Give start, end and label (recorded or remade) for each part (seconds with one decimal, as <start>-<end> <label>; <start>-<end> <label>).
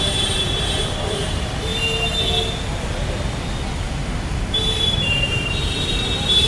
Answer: 0.0-1.7 remade; 1.7-4.8 recorded; 4.8-6.5 remade